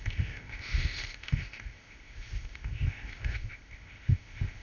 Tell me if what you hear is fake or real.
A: fake